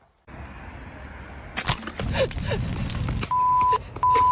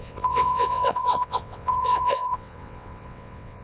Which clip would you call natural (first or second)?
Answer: first